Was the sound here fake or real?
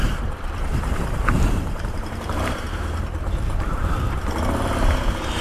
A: fake